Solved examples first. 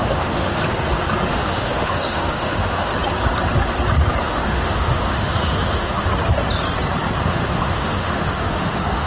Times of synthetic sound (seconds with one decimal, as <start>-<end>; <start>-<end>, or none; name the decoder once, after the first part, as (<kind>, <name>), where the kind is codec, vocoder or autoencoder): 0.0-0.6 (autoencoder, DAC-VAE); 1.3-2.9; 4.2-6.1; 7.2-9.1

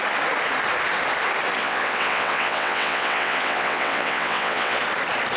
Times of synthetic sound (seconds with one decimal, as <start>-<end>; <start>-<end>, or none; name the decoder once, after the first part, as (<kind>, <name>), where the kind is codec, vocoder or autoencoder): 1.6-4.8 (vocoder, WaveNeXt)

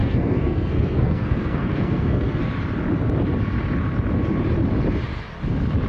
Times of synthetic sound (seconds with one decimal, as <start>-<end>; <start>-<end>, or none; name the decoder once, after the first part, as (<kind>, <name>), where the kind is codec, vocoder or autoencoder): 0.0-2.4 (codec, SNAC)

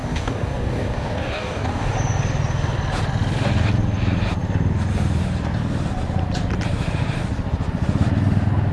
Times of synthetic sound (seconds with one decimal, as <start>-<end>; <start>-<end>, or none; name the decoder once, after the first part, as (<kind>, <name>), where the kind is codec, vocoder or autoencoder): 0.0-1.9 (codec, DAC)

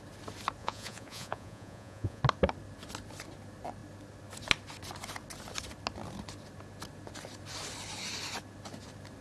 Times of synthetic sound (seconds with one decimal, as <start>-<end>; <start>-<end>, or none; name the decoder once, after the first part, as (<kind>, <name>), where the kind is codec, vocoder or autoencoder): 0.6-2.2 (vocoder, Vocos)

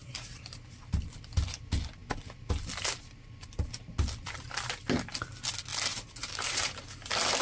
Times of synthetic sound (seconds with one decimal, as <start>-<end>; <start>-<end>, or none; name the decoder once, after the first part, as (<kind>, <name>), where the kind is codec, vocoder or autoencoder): 0.0-0.8 (vocoder, BigVGAN v2); 5.7-6.8

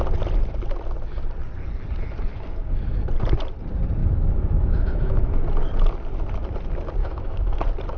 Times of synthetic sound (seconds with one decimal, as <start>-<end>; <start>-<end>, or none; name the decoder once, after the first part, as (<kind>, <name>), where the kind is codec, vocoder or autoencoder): 4.0-5.3 (autoencoder, DAC-VAE); 7.0-7.6

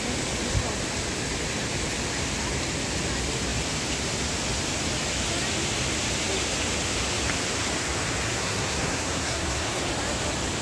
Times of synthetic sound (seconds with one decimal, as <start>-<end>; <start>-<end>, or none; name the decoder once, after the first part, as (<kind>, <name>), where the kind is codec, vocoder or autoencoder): 8.3-9.8 (codec, SNAC)